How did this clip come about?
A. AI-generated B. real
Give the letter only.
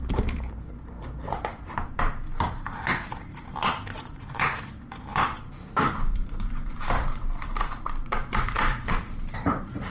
A